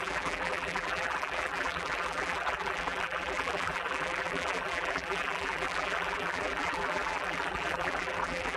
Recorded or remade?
remade